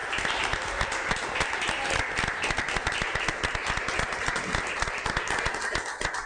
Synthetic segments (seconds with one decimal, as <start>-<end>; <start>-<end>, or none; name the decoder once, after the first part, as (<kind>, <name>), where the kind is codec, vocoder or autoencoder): none